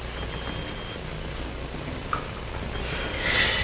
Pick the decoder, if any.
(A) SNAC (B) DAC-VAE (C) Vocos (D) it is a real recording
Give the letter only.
D